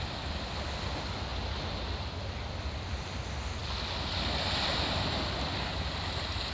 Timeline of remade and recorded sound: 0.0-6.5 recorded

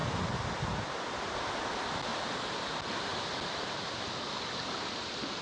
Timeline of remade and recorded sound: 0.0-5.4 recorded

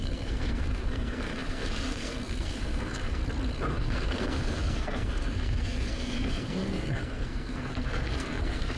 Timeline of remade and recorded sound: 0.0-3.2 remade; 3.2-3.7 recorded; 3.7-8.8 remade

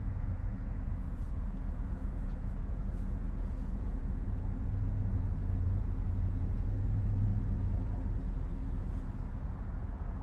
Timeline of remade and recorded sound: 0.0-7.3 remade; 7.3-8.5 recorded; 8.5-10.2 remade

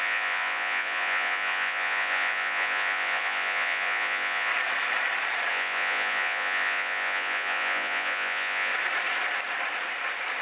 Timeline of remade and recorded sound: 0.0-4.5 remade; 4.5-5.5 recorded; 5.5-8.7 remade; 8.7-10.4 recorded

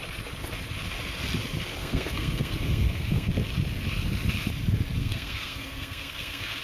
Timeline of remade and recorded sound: 0.0-1.8 recorded; 1.8-3.3 remade; 3.3-5.0 recorded; 5.0-6.6 remade